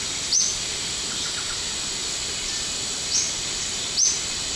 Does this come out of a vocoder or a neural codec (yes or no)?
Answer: no